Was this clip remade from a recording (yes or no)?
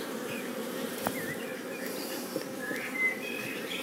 yes